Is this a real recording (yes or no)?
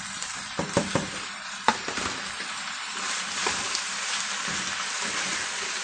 yes